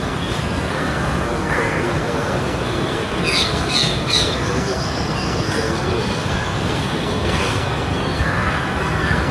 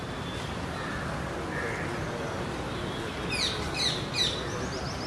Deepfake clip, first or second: first